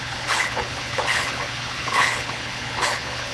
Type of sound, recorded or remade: remade